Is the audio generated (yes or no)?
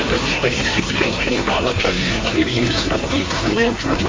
yes